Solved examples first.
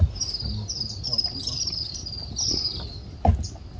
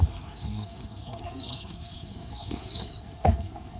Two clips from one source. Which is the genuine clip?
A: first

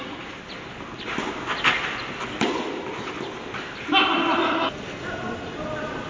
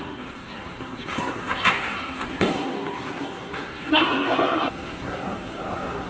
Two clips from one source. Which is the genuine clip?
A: first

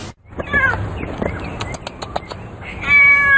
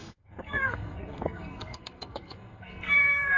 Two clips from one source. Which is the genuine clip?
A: first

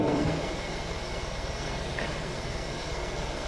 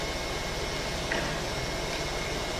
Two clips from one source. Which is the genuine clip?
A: second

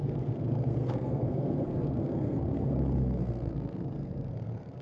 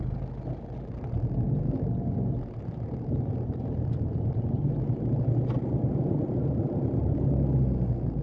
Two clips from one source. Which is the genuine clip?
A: second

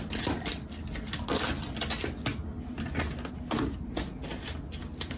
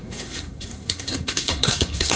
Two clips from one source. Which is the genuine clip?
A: first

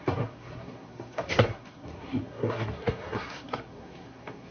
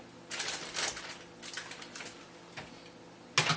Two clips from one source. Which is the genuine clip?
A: second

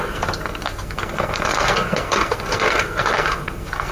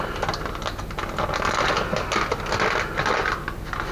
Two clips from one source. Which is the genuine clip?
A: second